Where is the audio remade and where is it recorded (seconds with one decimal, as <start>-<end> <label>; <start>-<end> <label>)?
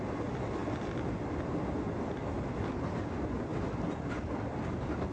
0.0-5.1 recorded